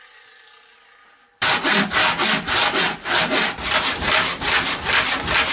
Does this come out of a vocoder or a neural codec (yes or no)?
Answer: no